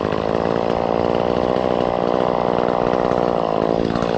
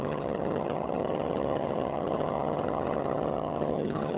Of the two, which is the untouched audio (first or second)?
first